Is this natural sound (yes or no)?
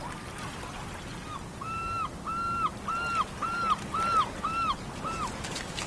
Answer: yes